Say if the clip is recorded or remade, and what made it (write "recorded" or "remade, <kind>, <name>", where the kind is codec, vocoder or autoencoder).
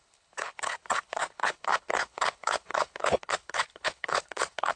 remade, codec, HILCodec